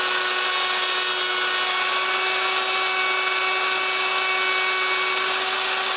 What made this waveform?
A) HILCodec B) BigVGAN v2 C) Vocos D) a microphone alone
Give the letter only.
D